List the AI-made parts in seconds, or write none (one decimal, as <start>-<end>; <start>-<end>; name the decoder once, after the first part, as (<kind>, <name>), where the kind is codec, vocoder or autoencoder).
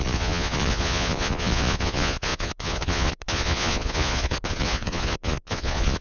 0.0-6.0 (vocoder, Vocos)